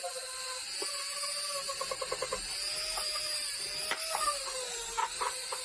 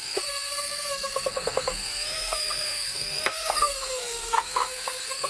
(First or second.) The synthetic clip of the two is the second